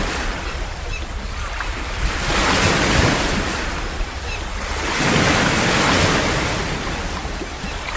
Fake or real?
real